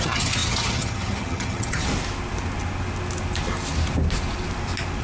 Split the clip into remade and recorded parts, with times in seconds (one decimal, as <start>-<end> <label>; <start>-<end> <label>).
0.0-1.9 remade; 1.9-5.0 recorded

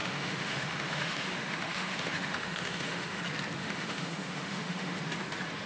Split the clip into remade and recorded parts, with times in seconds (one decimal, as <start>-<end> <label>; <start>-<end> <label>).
0.0-3.2 remade; 3.2-3.6 recorded; 3.6-5.0 remade; 5.0-5.7 recorded

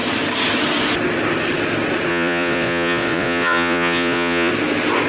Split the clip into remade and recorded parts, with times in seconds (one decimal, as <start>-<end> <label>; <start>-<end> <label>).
0.0-2.1 recorded; 2.1-4.5 remade; 4.5-5.1 recorded